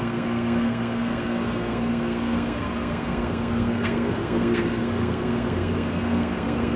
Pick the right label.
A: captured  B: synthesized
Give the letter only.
B